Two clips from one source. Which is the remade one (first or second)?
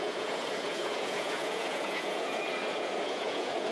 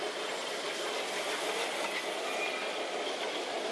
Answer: first